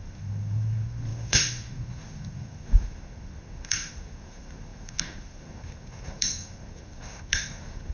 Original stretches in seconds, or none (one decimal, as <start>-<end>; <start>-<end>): none